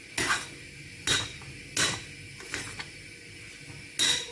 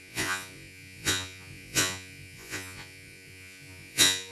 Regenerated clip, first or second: second